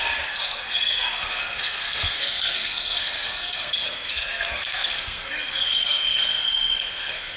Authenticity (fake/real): fake